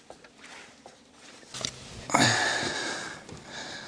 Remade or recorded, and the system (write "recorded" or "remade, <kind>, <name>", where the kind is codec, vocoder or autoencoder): recorded